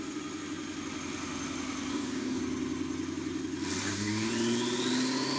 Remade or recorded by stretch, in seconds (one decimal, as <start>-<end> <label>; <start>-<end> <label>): 0.0-1.9 recorded; 1.9-2.4 remade; 2.4-3.8 recorded; 3.8-4.3 remade; 4.3-5.4 recorded